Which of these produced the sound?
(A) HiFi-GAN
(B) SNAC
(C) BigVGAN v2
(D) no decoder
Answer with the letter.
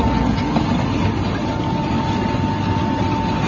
D